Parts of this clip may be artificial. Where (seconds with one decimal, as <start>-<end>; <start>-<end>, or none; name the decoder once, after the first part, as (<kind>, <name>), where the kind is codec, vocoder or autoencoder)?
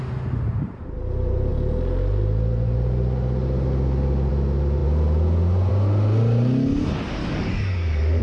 7.2-8.2 (codec, DAC)